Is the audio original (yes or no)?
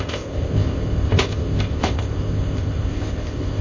no